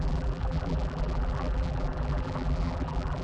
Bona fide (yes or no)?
no